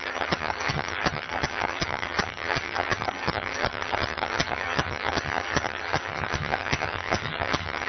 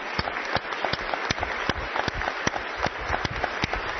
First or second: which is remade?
first